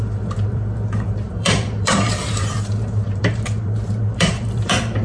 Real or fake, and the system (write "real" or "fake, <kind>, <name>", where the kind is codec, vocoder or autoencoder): fake, vocoder, BigVGAN v2